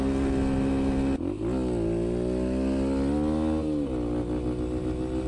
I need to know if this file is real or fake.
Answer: real